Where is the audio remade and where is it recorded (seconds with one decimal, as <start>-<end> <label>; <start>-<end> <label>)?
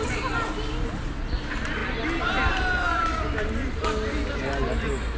0.0-5.2 recorded